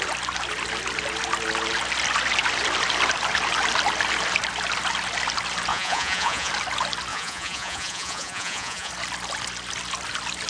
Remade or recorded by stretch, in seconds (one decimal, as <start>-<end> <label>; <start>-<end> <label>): 0.0-5.7 recorded; 5.7-6.5 remade; 6.5-7.1 recorded; 7.1-8.9 remade; 8.9-10.5 recorded